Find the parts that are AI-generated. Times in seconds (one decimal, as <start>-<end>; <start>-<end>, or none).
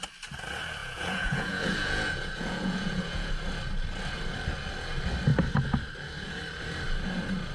0.8-3.3